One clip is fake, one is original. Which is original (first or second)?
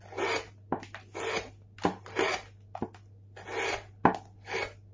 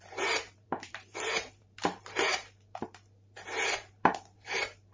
first